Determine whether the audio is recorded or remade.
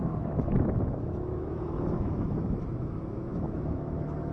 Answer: remade